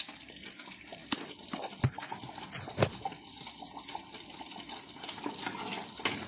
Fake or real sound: real